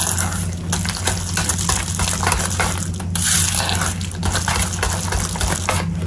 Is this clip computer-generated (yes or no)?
no